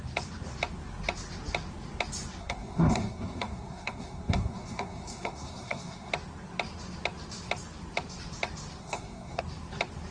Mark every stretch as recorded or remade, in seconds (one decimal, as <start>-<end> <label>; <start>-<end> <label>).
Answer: 0.0-2.4 recorded; 2.4-6.1 remade; 6.1-8.8 recorded; 8.8-9.4 remade; 9.4-10.1 recorded